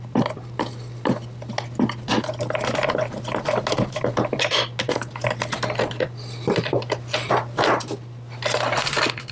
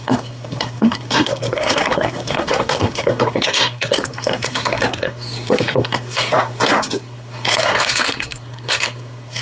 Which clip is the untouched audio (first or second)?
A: first